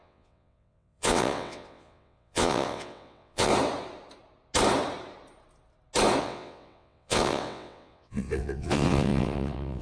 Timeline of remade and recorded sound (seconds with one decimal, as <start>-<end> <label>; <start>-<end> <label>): 0.0-3.5 remade; 3.5-6.2 recorded; 6.2-9.8 remade